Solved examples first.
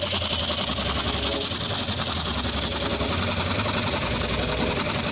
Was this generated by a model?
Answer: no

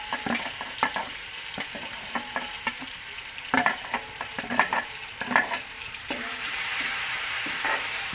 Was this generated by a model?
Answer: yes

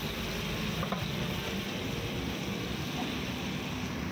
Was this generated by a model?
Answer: no